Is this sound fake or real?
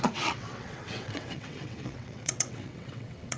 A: fake